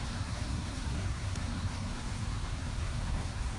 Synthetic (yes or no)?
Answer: yes